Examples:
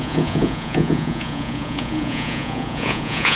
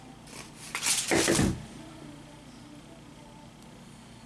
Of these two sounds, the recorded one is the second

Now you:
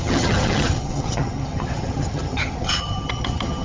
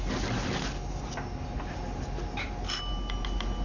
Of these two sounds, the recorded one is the second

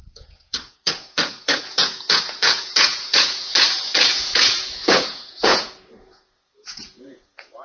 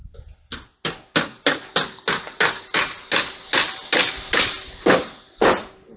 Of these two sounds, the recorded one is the second